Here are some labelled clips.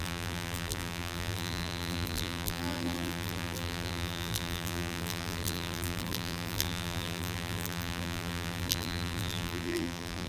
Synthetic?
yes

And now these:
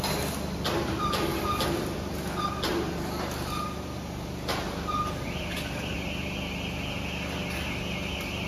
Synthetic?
no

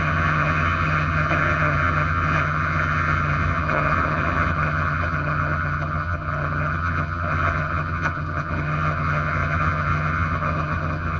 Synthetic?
yes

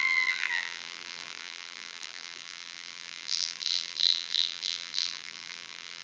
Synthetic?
yes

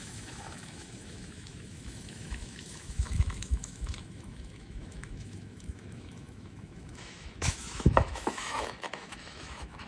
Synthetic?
yes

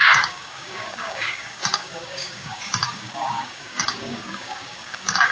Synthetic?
yes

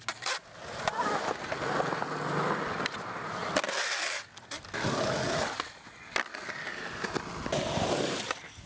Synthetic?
no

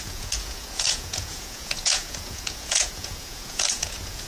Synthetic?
yes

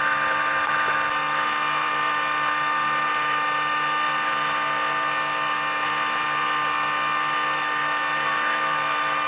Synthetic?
no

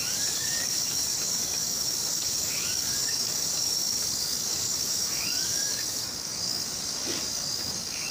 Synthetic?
yes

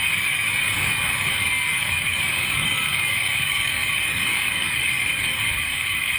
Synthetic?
yes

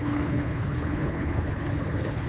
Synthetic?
yes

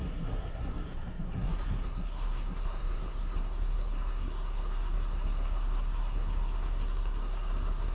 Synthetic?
yes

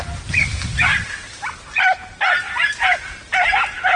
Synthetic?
no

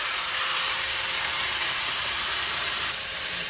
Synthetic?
yes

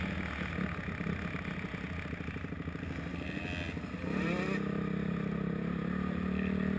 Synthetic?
no